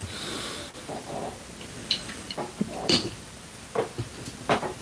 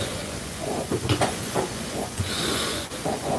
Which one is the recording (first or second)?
first